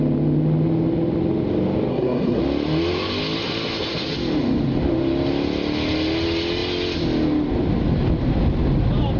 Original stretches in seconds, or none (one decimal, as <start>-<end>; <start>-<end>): 0.0-1.9; 2.4-9.2